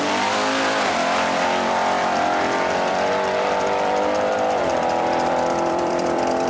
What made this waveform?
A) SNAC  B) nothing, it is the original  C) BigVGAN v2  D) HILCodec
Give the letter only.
C